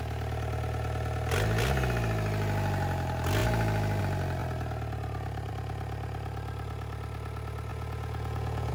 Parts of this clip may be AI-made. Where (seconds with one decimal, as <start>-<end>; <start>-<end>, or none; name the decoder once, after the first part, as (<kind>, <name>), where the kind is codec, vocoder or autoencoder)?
7.7-8.7 (vocoder, Vocos)